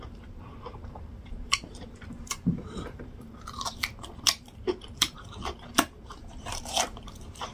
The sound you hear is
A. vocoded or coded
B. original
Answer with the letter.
A